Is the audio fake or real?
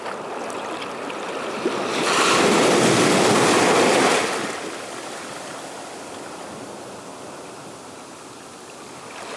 real